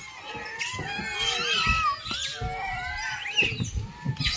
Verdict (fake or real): real